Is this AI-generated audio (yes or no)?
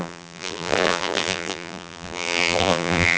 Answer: yes